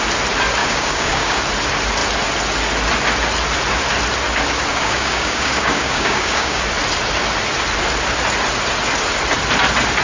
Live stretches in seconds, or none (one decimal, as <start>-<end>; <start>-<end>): 0.0-0.6; 1.4-4.7; 6.6-10.0